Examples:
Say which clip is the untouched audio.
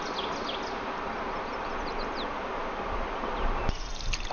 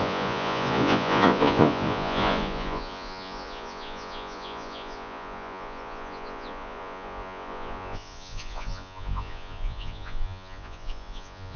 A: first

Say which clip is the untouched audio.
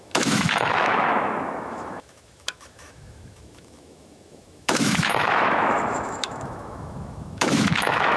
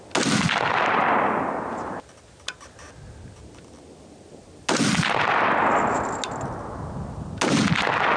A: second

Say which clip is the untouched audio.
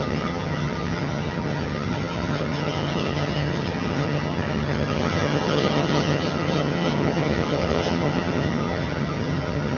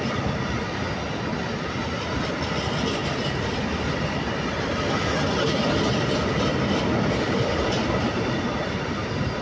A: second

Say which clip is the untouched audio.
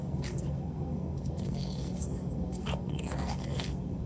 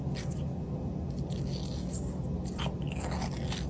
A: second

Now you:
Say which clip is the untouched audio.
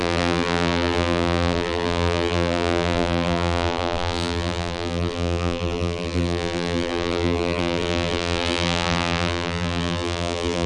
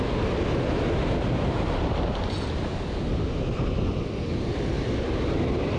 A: second